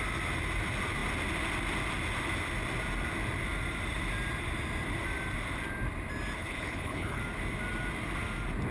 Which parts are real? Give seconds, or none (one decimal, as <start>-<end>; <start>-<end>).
0.0-6.4; 7.2-8.7

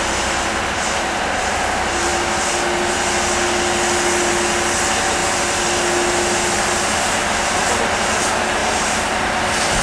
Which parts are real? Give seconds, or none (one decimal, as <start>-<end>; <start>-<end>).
0.0-9.8